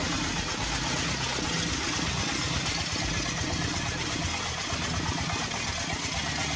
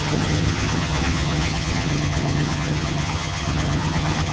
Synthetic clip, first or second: second